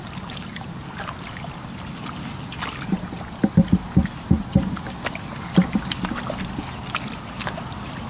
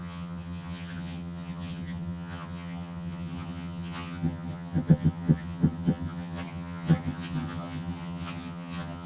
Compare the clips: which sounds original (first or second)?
first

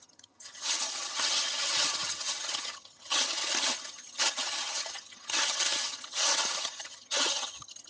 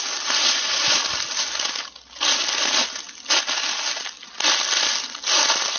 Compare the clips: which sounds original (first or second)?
second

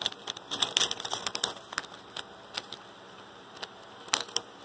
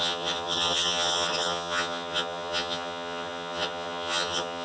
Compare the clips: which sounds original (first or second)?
first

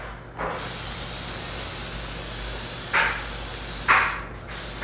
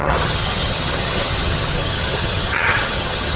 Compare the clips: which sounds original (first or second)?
first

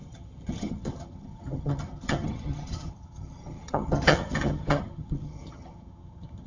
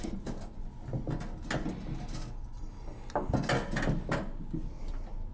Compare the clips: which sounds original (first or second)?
second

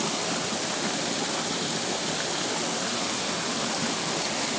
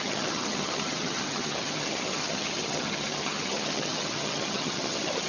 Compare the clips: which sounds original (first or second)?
first